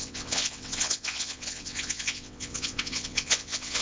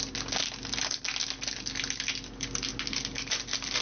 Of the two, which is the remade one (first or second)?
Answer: first